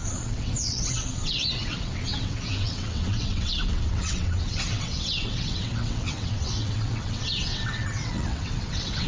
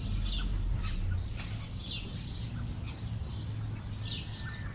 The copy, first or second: first